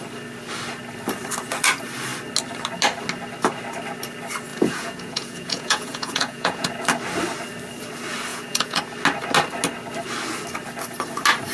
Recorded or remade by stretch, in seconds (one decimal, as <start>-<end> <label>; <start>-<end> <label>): 0.0-4.5 recorded; 4.5-6.7 remade; 6.7-8.3 recorded; 8.3-8.8 remade; 8.8-11.5 recorded